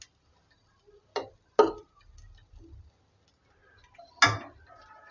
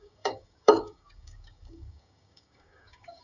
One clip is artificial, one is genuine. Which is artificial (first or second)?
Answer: second